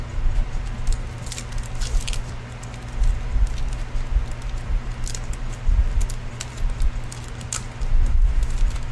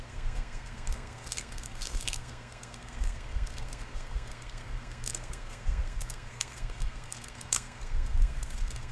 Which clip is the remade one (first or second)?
second